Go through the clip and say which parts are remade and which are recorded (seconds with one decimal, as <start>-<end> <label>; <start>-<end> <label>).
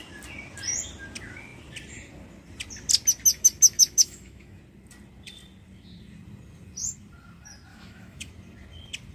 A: 0.0-3.3 recorded; 3.3-4.6 remade; 4.6-7.7 recorded; 7.7-8.3 remade; 8.3-9.1 recorded